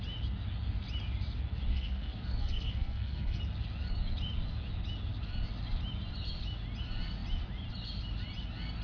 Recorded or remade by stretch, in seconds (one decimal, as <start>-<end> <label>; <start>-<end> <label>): 0.0-1.7 recorded; 1.7-3.4 remade; 3.4-8.8 recorded